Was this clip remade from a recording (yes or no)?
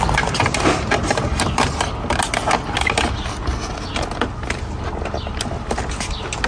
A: no